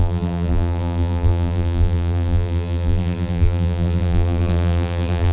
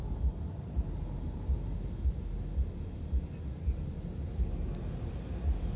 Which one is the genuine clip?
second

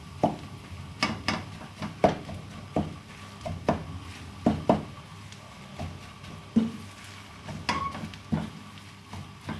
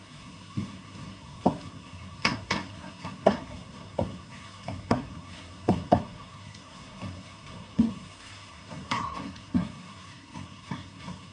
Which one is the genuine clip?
first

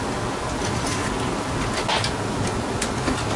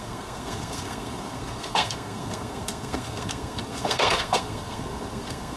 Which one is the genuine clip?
first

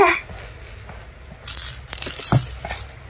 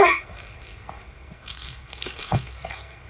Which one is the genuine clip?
first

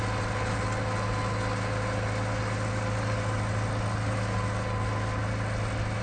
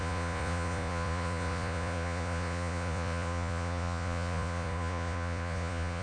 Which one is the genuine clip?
first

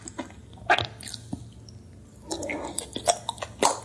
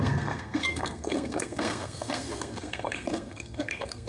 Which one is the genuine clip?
first